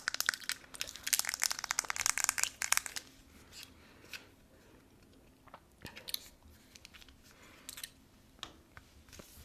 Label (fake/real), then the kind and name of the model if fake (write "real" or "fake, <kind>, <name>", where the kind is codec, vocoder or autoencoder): real